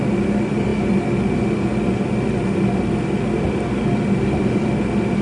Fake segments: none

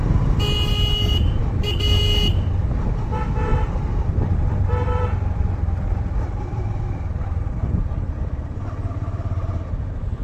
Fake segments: 3.5-6.6 (vocoder, BigVGAN v2)

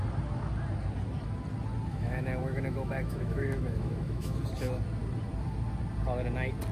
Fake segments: 1.9-4.4 (autoencoder, DAC-VAE)

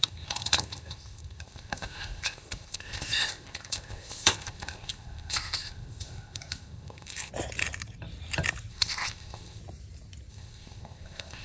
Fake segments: 0.0-7.3 (codec, ZipCodec); 8.7-9.6; 10.3-11.4

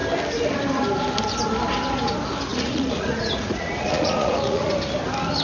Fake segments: 2.5-4.7 (vocoder, Vocos)

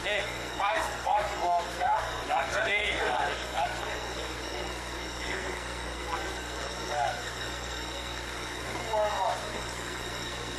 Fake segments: 0.0-10.6 (codec, SNAC)